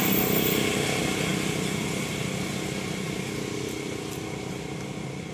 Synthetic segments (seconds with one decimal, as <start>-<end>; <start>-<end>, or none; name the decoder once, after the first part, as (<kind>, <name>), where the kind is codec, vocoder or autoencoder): none